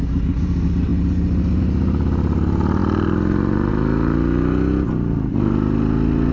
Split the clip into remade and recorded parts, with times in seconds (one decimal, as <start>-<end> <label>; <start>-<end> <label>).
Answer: 0.0-6.3 recorded